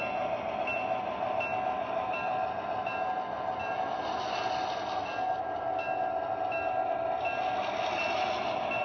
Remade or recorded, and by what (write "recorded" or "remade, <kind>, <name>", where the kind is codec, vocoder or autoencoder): recorded